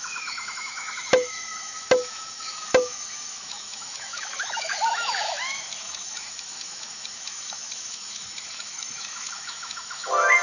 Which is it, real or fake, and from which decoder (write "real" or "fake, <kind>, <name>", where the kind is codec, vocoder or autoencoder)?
fake, autoencoder, DAC-VAE